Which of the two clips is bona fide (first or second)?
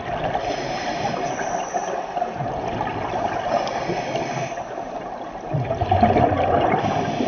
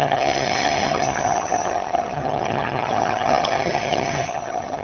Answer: first